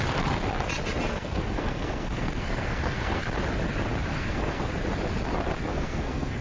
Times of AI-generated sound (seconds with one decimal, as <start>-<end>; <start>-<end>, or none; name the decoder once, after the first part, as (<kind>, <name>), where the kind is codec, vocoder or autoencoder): 1.1-3.2 (codec, SNAC); 4.1-4.7; 5.7-6.4